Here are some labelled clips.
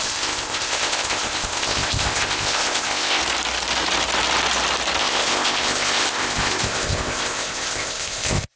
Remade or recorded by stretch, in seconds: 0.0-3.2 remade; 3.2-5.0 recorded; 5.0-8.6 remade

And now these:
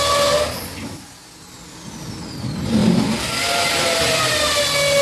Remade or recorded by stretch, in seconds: 0.0-5.0 recorded

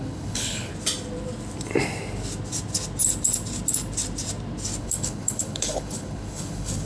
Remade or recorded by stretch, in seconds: 0.0-0.7 remade; 0.7-4.8 recorded; 4.8-6.9 remade

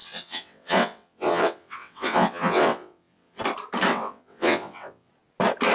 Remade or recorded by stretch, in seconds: 0.0-3.4 remade; 3.4-3.9 recorded; 3.9-5.1 remade; 5.1-5.7 recorded